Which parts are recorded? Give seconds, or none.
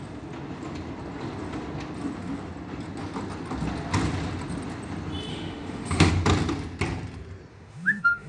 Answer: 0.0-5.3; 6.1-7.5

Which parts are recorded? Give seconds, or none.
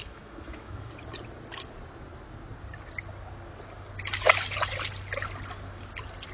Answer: 0.9-6.3